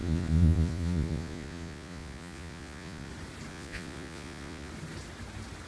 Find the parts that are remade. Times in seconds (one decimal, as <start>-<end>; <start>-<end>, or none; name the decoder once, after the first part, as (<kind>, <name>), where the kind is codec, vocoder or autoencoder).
0.0-3.1 (vocoder, Vocos); 3.5-4.7